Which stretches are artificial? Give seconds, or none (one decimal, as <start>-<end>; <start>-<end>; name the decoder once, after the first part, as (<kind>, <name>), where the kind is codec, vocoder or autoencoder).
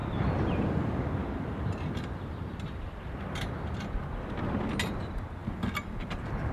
0.0-3.9 (vocoder, BigVGAN v2); 5.4-6.5